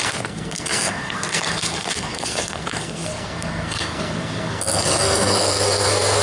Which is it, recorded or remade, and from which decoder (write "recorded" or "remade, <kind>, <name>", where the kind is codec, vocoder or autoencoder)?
remade, codec, SNAC